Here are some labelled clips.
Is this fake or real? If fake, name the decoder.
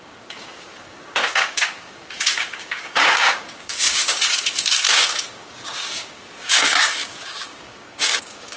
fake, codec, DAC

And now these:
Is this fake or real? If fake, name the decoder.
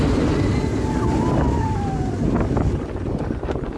real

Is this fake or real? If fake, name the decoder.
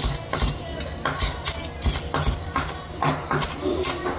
real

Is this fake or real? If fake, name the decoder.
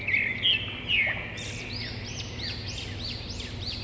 real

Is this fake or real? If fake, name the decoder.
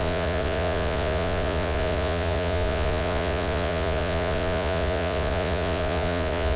fake, vocoder, Vocos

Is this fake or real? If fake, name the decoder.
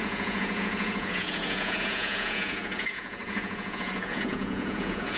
fake, vocoder, Vocos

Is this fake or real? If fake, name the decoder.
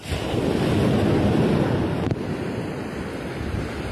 real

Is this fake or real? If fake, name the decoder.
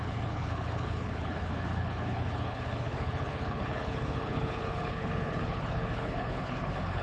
fake, codec, HILCodec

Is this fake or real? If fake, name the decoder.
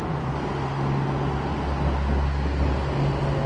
real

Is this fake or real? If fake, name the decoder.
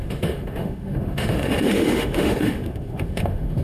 fake, autoencoder, DAC-VAE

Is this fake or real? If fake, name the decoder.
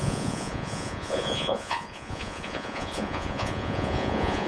fake, vocoder, Vocos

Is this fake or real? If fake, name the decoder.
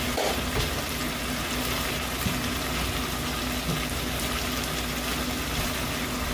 real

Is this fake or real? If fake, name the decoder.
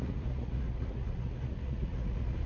fake, vocoder, Vocos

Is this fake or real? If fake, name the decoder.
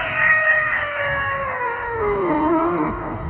fake, codec, DAC